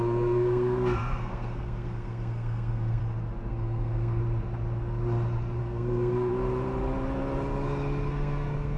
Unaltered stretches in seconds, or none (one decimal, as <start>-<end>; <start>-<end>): 3.0-3.5; 4.2-5.6; 6.3-8.1

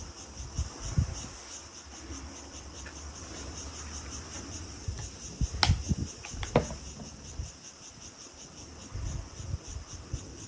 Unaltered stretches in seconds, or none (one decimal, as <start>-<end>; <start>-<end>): 0.0-10.5

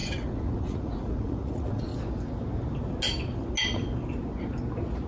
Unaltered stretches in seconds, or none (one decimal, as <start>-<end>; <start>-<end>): 1.9-5.1

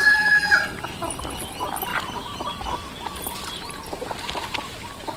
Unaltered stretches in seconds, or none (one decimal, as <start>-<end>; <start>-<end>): 0.6-5.2

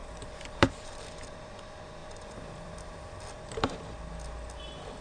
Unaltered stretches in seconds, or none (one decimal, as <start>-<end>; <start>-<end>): 1.4-2.0; 4.1-5.0

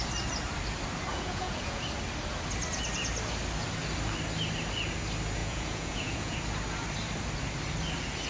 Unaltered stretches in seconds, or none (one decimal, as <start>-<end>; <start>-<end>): 0.0-1.1; 1.8-5.4; 6.4-8.3

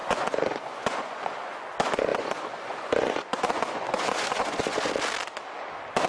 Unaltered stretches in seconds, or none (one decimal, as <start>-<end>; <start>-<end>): 1.7-2.1; 4.9-6.1